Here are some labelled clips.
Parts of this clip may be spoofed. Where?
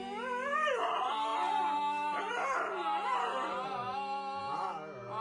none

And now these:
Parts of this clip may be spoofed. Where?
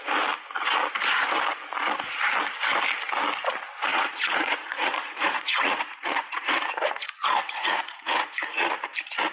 3.9-8.8 (vocoder, Vocos)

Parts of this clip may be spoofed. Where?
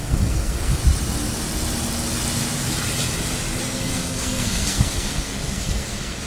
0.0-0.8 (codec, SNAC); 3.6-6.3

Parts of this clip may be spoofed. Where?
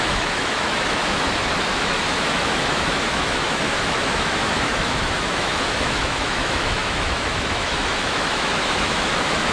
0.0-9.5 (autoencoder, DAC-VAE)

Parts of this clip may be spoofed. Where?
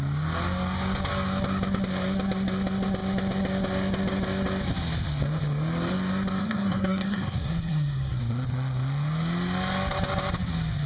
6.4-8.2 (codec, SNAC)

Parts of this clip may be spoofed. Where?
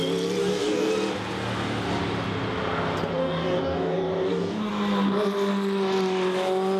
0.4-0.9 (codec, DAC); 3.2-4.7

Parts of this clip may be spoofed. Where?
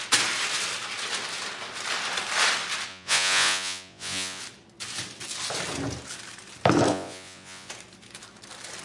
2.9-4.4 (vocoder, Vocos); 6.9-7.7